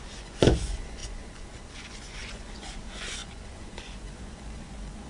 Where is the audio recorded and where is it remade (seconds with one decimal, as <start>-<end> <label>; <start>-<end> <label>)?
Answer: 0.0-5.1 remade